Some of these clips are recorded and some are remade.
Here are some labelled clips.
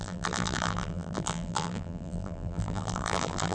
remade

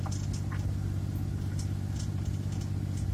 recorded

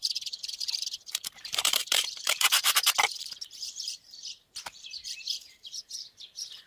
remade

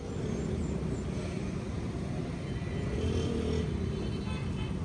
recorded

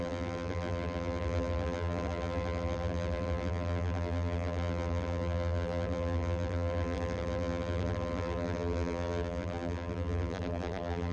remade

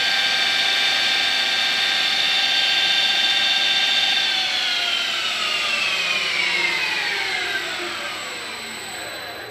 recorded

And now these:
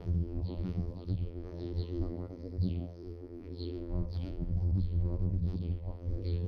remade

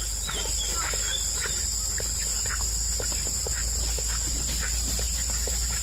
recorded